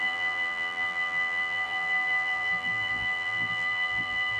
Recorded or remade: remade